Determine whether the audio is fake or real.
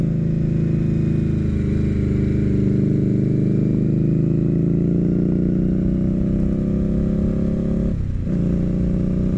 real